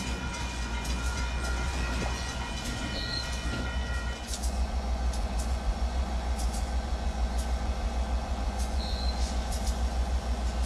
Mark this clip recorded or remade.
remade